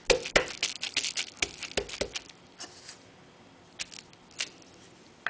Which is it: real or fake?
real